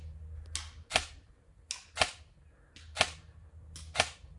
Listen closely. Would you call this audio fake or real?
real